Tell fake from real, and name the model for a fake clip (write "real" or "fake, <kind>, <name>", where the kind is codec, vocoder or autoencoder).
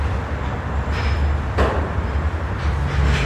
real